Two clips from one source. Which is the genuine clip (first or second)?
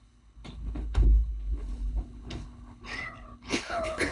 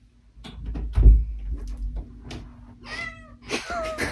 second